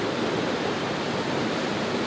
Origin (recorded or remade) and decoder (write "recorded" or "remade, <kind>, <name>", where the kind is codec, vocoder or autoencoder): recorded